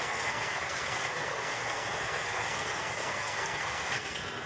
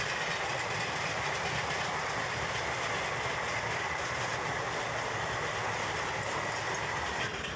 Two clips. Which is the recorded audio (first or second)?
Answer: second